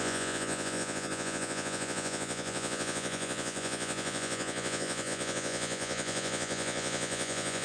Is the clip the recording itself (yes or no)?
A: no